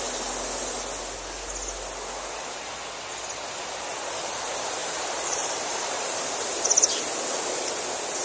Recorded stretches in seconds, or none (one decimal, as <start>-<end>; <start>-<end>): 0.0-4.8; 6.3-8.2